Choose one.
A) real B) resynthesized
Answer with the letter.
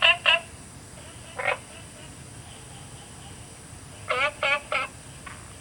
A